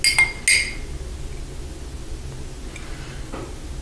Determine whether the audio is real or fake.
real